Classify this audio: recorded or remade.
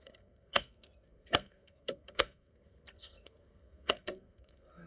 remade